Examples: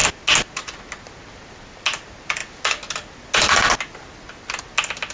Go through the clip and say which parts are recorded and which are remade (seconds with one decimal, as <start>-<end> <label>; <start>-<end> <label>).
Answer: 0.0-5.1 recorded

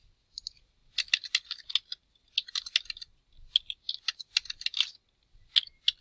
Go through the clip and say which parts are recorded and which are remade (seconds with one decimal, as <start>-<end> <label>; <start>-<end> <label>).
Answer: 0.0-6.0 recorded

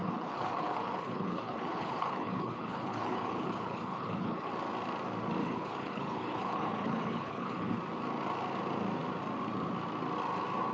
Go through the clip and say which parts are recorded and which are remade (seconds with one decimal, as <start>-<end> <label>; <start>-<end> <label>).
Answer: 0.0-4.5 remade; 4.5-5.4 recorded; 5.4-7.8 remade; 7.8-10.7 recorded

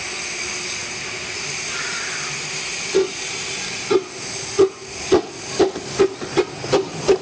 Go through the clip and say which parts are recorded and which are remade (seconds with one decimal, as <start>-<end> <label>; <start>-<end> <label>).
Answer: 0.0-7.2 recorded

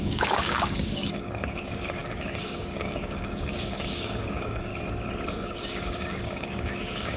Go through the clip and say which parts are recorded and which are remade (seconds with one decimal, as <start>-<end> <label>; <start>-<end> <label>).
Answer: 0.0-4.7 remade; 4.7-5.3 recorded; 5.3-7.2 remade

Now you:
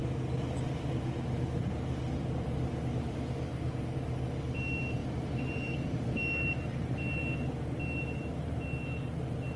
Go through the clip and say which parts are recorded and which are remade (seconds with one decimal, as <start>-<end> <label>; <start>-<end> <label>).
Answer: 0.0-5.0 recorded; 5.0-6.0 remade; 6.0-9.6 recorded

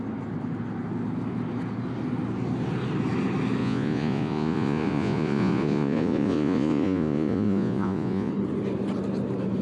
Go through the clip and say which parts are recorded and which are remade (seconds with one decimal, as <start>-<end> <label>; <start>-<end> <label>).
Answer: 0.0-3.6 recorded; 3.6-8.3 remade; 8.3-9.6 recorded

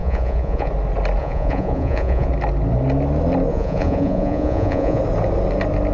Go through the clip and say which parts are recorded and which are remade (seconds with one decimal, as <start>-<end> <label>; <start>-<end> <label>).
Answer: 0.0-0.7 remade; 0.7-1.2 recorded; 1.2-2.3 remade; 2.3-3.5 recorded; 3.5-5.0 remade; 5.0-5.9 recorded